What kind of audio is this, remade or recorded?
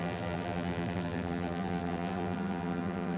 remade